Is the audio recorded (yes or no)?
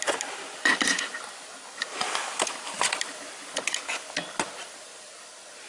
yes